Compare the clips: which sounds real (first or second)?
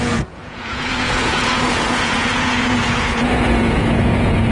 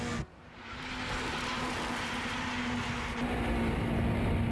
second